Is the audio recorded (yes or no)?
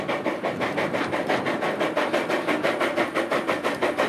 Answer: yes